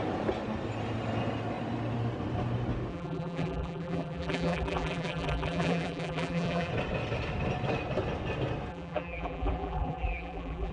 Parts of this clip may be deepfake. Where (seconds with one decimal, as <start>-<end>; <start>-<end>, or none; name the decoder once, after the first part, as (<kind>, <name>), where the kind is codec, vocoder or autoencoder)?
2.9-6.7 (vocoder, BigVGAN v2); 8.7-10.7

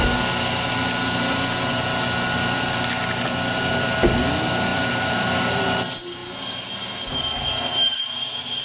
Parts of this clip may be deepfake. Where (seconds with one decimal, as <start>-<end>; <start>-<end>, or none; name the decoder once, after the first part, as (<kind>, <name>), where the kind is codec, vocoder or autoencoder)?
4.7-5.6 (vocoder, BigVGAN v2)

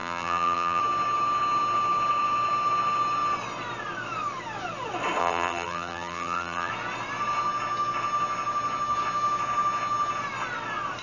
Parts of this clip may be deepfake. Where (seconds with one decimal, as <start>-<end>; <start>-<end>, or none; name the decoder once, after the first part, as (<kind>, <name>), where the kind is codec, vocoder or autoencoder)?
0.0-0.8 (vocoder, BigVGAN v2); 5.2-6.7

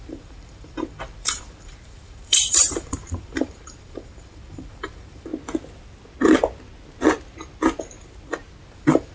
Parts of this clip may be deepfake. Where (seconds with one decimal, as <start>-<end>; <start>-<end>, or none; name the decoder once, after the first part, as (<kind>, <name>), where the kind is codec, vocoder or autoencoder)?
0.0-5.3 (vocoder, BigVGAN v2); 8.7-9.1

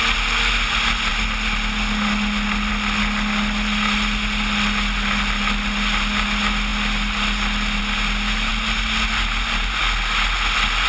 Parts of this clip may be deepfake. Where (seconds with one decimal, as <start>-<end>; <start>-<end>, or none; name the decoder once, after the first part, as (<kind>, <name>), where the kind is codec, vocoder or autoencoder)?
none